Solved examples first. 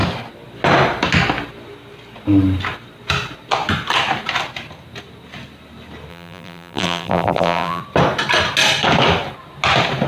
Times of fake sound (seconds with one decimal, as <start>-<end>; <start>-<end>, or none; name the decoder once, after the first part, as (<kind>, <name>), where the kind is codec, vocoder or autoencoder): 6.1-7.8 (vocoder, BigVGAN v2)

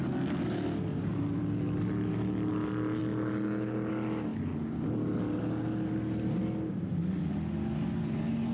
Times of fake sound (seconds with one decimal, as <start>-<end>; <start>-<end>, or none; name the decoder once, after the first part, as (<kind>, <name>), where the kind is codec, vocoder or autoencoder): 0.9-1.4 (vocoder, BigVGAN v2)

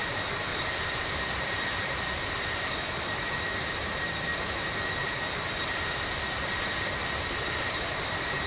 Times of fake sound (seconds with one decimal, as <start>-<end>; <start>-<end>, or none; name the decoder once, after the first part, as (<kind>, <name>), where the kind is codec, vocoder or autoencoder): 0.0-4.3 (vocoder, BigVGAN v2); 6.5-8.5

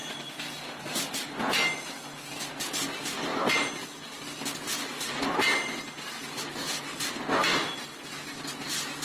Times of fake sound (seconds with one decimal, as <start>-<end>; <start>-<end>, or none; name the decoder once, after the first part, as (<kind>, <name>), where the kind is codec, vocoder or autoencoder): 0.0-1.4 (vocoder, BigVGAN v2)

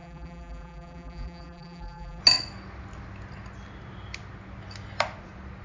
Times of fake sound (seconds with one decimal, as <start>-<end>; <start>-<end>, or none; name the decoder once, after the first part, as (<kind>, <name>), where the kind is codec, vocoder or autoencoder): 0.0-2.2 (vocoder, BigVGAN v2)

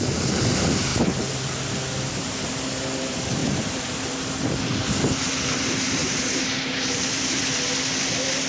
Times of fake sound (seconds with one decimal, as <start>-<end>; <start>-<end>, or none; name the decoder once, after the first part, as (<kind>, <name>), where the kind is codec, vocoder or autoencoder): 6.0-7.4 (vocoder, BigVGAN v2)

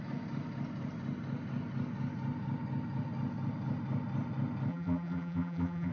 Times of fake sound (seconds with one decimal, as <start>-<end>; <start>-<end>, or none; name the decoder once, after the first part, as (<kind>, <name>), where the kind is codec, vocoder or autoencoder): 4.7-5.9 (vocoder, BigVGAN v2)